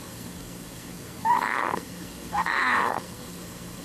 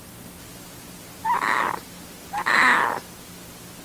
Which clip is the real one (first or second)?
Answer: second